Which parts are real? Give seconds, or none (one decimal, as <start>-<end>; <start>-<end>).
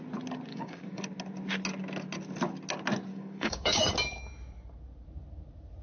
0.0-0.5; 1.0-3.1; 3.9-5.8